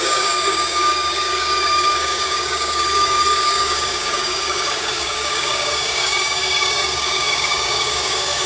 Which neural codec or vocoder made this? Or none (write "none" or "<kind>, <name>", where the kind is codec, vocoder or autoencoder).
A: codec, DAC